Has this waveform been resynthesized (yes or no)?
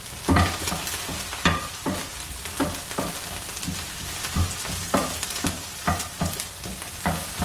no